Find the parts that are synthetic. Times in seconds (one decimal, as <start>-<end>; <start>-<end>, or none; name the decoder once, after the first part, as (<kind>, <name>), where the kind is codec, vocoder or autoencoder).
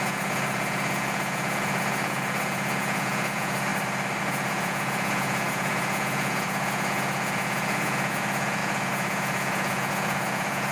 0.0-3.7 (vocoder, Vocos); 4.2-10.7